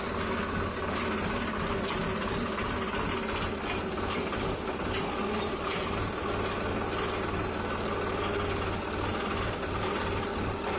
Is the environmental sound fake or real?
real